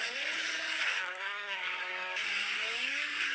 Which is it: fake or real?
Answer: fake